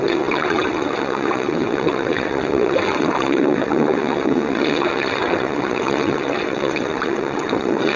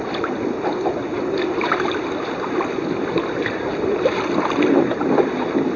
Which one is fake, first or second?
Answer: first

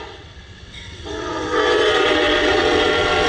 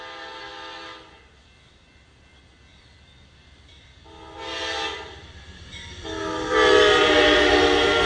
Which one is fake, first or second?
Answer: first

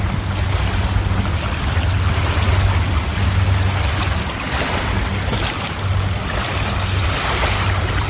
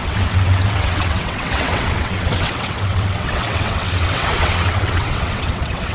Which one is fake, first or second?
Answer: second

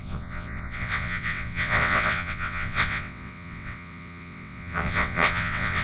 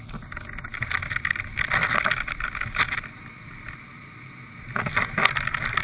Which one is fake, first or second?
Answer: first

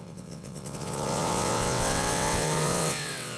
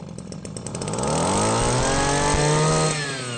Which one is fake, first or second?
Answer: first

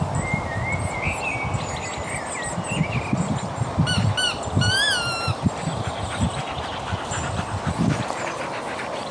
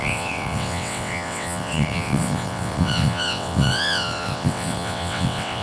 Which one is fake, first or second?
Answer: second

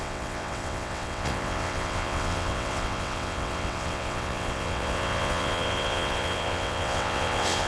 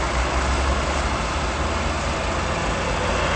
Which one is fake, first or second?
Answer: first